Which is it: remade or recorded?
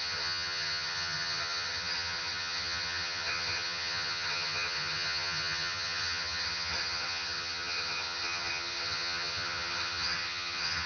remade